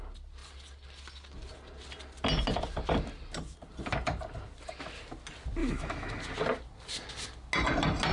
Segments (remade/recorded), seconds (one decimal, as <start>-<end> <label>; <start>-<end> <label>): 0.0-5.6 recorded; 5.6-6.1 remade; 6.1-8.1 recorded